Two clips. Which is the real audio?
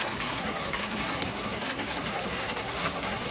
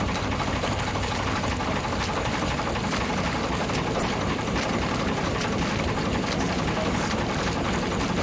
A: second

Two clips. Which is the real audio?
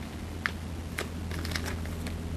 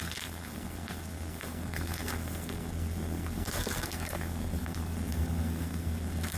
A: first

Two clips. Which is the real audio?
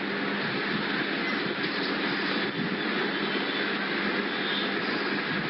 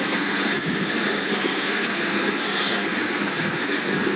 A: first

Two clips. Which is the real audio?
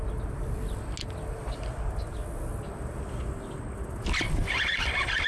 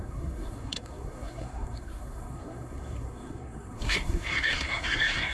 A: first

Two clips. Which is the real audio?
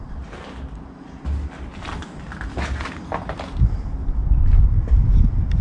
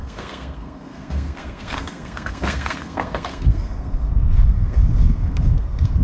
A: first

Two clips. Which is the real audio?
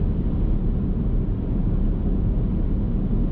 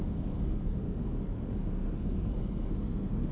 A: first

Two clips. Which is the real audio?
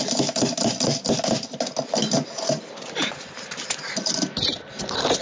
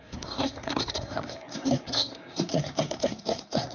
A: first